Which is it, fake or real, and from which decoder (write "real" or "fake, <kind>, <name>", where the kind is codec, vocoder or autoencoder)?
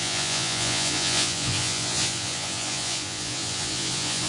fake, vocoder, Vocos